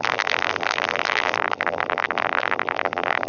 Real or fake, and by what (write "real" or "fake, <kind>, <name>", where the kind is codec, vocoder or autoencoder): fake, vocoder, BigVGAN v2